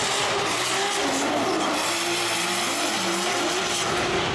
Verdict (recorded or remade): recorded